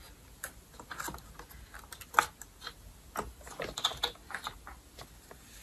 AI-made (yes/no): no